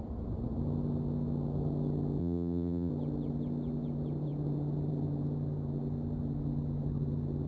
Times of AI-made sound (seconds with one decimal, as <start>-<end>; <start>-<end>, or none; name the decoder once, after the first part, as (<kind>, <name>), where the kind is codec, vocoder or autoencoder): 2.2-2.9 (vocoder, BigVGAN v2)